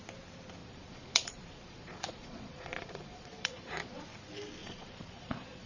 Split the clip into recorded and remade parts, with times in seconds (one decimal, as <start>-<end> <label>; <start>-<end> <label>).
0.0-0.6 recorded; 0.6-4.0 remade; 4.0-4.6 recorded; 4.6-5.7 remade